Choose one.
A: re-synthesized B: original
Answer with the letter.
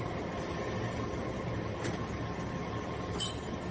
B